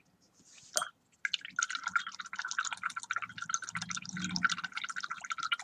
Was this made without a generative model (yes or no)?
yes